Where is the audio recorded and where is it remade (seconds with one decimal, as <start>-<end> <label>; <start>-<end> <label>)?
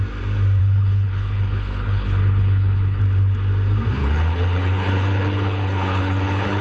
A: 0.0-0.6 recorded; 0.6-3.0 remade; 3.0-4.0 recorded; 4.0-6.6 remade